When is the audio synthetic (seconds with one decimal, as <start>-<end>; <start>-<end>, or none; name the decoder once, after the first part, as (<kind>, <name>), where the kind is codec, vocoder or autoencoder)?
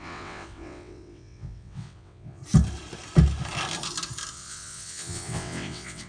0.0-2.4 (vocoder, WaveNeXt); 4.3-6.1